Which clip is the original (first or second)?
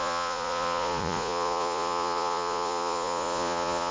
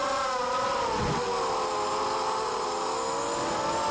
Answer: second